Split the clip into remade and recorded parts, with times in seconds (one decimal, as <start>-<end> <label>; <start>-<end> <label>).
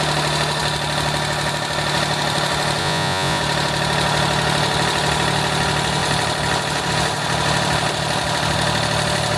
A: 0.0-2.8 recorded; 2.8-3.4 remade; 3.4-9.4 recorded